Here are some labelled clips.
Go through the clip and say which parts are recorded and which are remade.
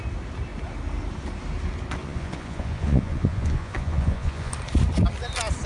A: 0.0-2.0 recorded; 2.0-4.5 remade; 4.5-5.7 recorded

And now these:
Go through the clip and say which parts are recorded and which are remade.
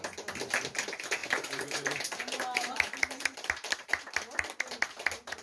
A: 0.0-1.2 recorded; 1.2-3.9 remade; 3.9-5.4 recorded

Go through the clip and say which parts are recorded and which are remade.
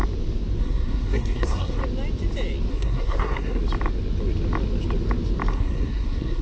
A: 0.0-0.6 recorded; 0.6-1.8 remade; 1.8-2.7 recorded; 2.7-3.6 remade; 3.6-5.5 recorded; 5.5-6.4 remade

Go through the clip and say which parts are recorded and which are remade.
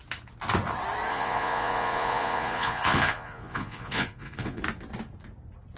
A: 0.0-1.1 recorded; 1.1-4.6 remade; 4.6-5.8 recorded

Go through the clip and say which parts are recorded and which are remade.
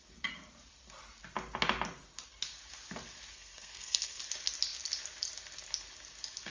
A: 0.0-3.3 recorded; 3.3-4.2 remade; 4.2-6.5 recorded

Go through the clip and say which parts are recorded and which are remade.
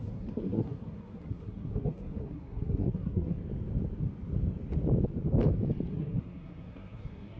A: 0.0-3.4 remade; 3.4-5.9 recorded; 5.9-7.4 remade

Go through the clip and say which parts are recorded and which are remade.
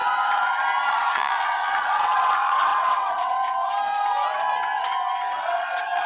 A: 0.0-0.9 recorded; 0.9-3.7 remade; 3.7-5.4 recorded; 5.4-6.1 remade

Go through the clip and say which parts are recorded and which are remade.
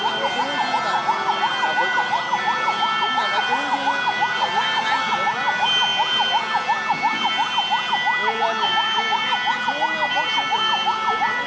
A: 0.0-11.5 recorded